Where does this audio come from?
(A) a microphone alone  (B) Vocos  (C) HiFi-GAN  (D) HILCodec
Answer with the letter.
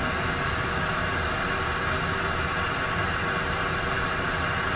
A